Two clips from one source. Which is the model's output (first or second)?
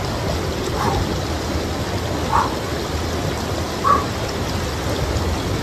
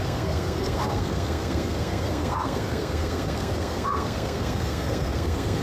second